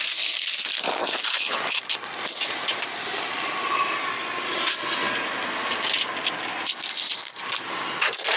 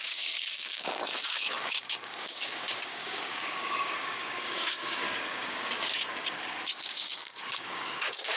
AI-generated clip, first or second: second